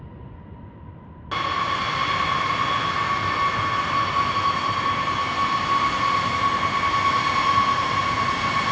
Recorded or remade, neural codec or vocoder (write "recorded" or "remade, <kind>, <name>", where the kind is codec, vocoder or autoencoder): recorded